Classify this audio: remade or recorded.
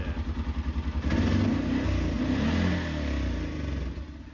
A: recorded